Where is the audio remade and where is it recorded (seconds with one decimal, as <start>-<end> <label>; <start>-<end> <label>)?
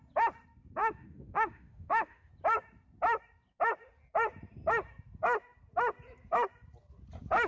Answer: 0.0-0.8 recorded; 0.8-2.3 remade; 2.3-7.5 recorded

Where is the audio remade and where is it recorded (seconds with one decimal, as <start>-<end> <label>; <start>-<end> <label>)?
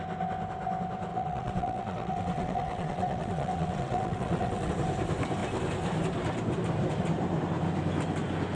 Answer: 0.0-1.1 recorded; 1.1-4.7 remade; 4.7-8.6 recorded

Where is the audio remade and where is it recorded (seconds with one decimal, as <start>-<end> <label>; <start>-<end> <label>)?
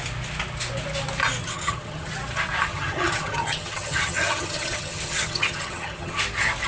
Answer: 0.0-1.4 recorded; 1.4-2.1 remade; 2.1-2.7 recorded; 2.7-6.2 remade; 6.2-6.7 recorded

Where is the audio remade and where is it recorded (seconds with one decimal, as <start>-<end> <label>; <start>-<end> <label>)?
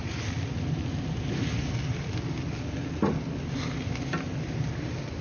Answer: 0.0-5.2 recorded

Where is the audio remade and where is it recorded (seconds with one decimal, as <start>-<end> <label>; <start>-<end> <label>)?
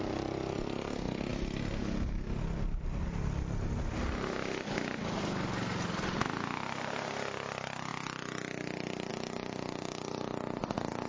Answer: 0.0-11.1 recorded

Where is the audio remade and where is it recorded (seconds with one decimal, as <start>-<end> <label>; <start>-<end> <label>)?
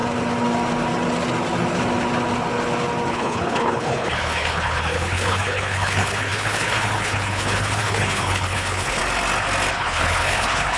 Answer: 0.0-3.1 recorded; 3.1-9.0 remade; 9.0-9.7 recorded; 9.7-10.8 remade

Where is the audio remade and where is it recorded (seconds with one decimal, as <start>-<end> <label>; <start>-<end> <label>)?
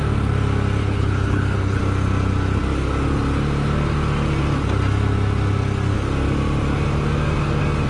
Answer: 0.0-0.8 recorded; 0.8-1.8 remade; 1.8-7.9 recorded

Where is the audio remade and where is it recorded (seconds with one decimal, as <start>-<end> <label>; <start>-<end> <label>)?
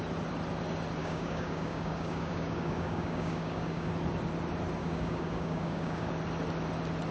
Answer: 0.0-1.0 recorded; 1.0-3.9 remade; 3.9-4.8 recorded; 4.8-6.1 remade; 6.1-7.1 recorded